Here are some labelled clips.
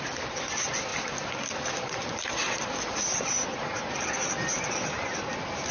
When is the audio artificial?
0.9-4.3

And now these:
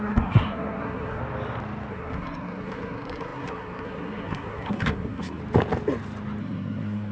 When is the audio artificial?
0.0-1.2; 1.9-5.4; 6.4-7.1

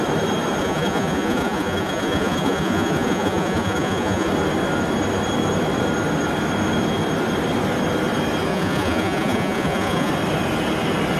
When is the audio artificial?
0.6-4.3; 8.5-10.1

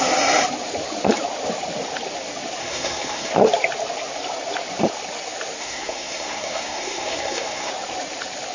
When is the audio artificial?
2.6-3.3; 5.6-7.7

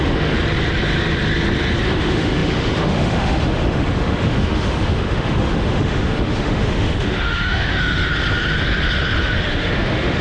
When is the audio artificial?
0.0-0.4; 1.8-8.1; 9.2-10.2

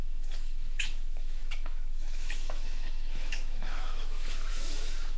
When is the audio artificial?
0.0-5.2

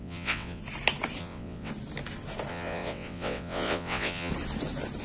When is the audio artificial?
0.0-0.6; 1.2-1.7; 2.5-4.3

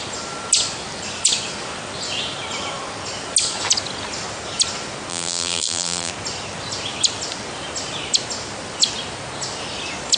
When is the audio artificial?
5.1-6.1